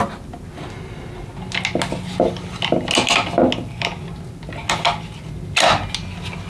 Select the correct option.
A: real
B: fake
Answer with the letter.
A